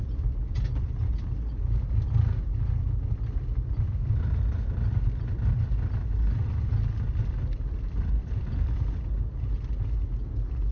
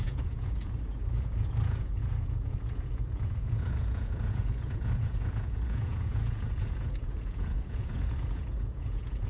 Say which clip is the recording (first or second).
first